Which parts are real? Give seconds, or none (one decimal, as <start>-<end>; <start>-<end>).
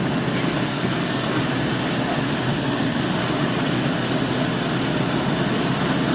0.0-0.7; 1.4-2.5; 3.0-6.1